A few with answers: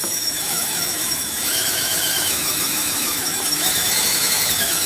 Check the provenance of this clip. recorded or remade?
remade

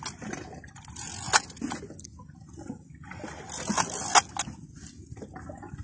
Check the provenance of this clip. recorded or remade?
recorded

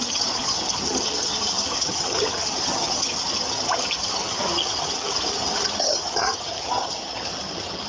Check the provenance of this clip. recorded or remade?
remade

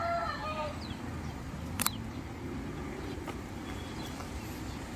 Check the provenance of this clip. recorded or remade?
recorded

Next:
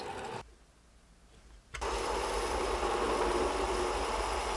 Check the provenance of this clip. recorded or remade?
recorded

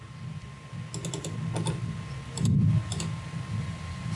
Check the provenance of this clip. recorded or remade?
recorded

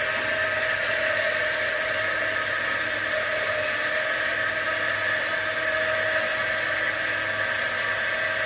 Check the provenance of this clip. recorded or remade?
recorded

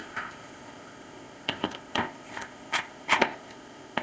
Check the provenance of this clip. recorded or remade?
remade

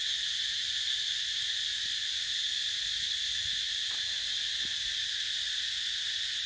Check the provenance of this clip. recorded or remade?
recorded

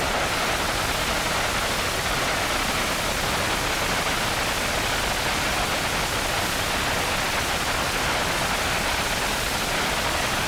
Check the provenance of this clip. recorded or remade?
recorded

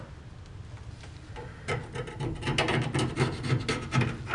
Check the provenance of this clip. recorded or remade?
recorded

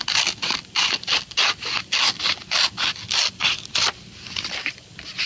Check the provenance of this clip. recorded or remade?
recorded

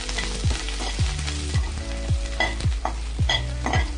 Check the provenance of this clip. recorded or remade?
recorded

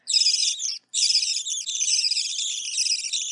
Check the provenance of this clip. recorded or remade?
recorded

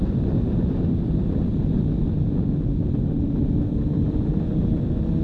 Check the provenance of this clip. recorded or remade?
recorded